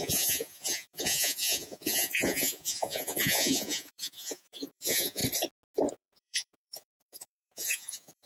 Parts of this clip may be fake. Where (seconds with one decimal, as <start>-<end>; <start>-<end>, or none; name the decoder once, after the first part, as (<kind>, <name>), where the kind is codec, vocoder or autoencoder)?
0.0-5.2 (vocoder, Vocos); 5.9-8.3